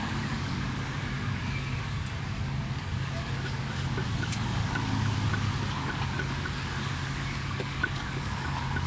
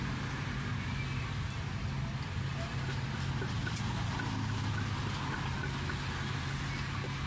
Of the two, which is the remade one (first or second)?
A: first